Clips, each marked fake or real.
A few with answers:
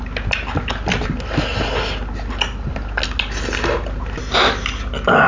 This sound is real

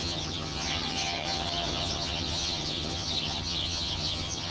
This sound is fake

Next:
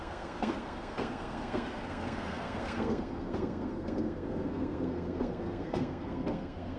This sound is fake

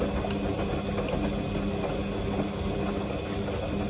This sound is real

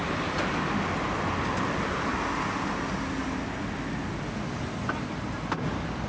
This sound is real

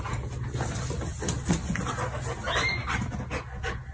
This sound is real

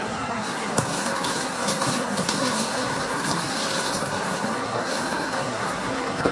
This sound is fake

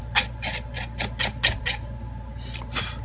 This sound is real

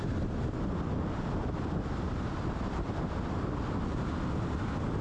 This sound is real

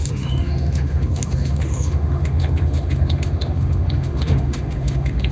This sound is fake